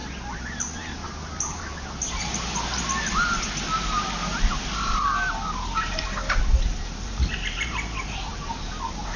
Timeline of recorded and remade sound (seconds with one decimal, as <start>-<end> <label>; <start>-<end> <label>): 0.0-9.2 recorded